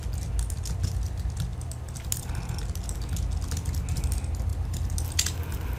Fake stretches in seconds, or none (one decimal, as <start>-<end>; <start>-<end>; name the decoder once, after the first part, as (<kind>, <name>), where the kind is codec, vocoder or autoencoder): none